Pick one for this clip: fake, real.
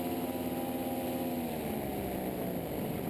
real